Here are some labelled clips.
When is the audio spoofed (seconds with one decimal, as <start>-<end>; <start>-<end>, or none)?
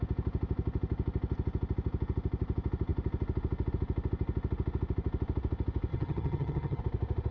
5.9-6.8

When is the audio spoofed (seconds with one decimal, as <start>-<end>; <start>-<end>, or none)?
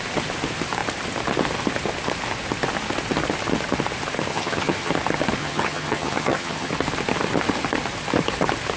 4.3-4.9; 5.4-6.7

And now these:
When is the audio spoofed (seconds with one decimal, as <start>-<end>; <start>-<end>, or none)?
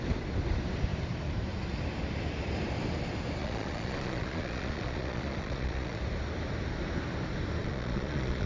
3.4-6.0; 7.6-8.5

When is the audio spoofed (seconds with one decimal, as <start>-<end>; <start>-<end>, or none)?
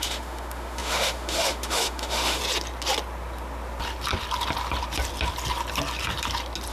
0.0-2.4